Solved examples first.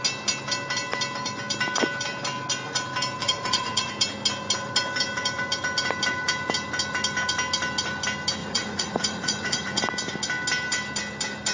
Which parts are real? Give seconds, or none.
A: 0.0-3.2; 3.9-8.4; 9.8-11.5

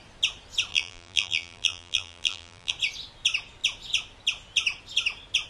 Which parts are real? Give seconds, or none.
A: 0.0-0.7; 2.7-5.5

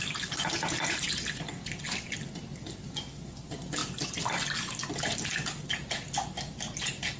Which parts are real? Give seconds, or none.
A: 0.0-7.2

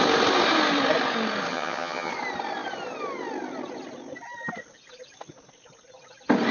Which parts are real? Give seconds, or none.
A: 0.0-1.5; 2.1-6.5

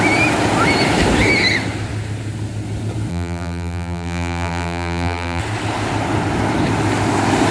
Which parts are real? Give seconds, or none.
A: 0.0-3.1; 5.4-7.5

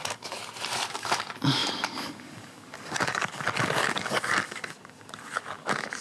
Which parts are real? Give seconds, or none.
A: 0.4-0.9

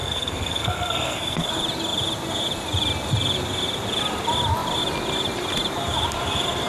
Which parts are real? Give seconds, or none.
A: 1.5-6.7

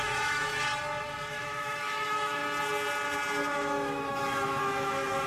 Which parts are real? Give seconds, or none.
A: 0.7-1.3; 2.4-3.5